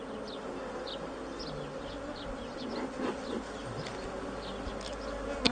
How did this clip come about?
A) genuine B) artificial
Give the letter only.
A